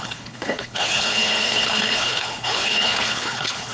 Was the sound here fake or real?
fake